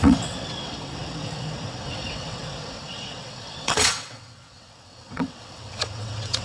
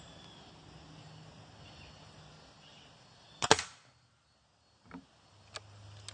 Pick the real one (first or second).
second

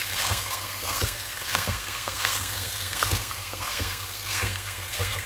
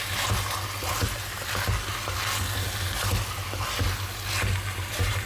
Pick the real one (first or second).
second